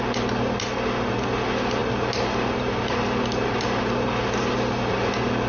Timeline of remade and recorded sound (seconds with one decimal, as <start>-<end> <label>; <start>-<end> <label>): 0.0-1.8 recorded; 1.8-5.1 remade; 5.1-5.5 recorded